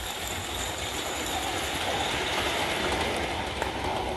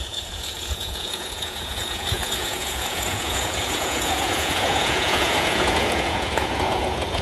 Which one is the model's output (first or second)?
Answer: second